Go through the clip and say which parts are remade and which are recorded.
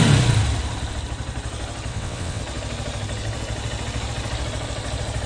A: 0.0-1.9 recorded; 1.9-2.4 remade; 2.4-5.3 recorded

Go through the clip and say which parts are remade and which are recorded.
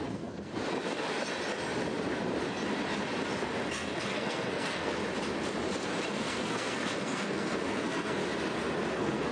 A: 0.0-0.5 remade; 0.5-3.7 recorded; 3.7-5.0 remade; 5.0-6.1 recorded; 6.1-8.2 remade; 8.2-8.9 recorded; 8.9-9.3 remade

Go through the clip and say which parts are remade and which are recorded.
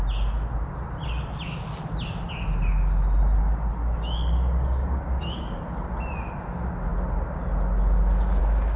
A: 0.0-3.8 recorded; 3.8-5.6 remade; 5.6-8.8 recorded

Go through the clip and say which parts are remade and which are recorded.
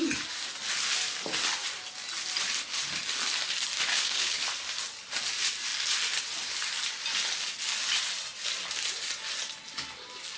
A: 0.0-3.9 recorded; 3.9-4.4 remade; 4.4-10.4 recorded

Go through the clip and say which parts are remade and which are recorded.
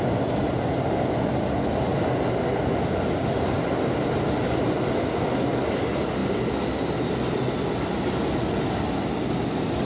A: 0.0-9.9 recorded